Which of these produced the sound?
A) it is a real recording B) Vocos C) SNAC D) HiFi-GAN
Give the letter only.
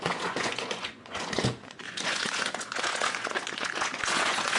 B